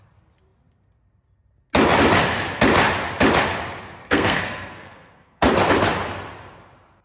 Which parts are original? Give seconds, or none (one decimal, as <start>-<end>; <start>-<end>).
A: 0.0-4.0; 5.4-7.0